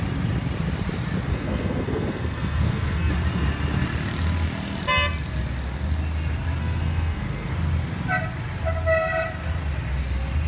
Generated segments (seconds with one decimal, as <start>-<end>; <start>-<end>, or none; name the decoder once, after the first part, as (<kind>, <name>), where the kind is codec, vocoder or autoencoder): 1.3-3.1 (codec, SNAC); 6.6-7.5